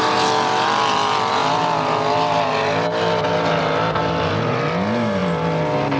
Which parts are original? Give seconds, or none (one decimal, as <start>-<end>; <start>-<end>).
0.0-6.0